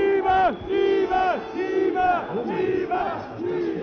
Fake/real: real